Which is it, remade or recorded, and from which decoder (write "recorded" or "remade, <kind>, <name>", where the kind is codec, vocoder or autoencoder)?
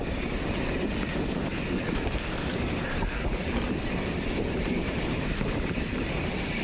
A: remade, vocoder, BigVGAN v2